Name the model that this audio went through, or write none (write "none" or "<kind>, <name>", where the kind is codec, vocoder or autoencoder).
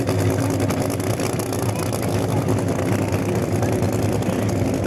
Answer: none